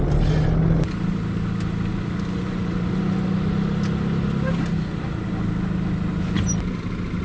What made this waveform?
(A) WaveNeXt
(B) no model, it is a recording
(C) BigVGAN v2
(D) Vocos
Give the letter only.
B